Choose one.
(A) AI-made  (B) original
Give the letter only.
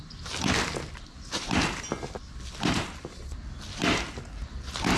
B